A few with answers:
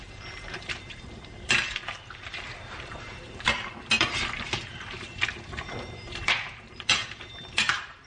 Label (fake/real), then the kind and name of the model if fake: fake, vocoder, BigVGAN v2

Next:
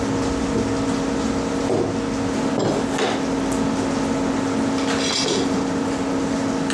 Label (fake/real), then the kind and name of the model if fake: real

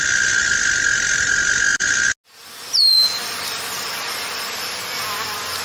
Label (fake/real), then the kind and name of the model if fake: real